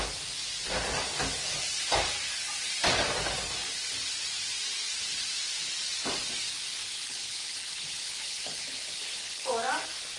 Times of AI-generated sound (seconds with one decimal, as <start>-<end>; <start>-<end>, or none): 6.9-9.5